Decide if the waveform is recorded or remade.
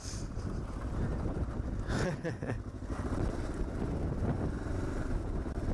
remade